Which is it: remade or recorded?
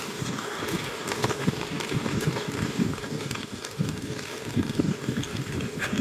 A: remade